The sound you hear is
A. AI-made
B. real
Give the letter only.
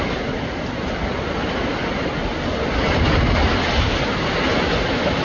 B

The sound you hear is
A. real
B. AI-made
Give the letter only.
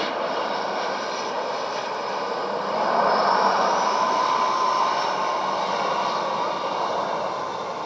A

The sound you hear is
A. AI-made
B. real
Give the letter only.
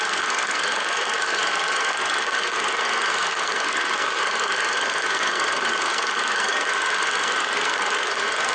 A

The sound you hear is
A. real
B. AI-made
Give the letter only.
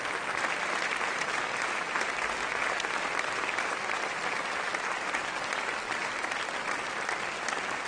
A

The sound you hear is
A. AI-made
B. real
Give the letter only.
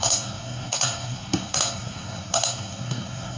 A